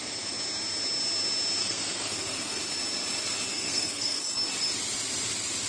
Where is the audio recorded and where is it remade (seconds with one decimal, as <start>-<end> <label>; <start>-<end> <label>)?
0.0-1.6 recorded; 1.6-2.6 remade; 2.6-3.5 recorded; 3.5-4.2 remade; 4.2-5.7 recorded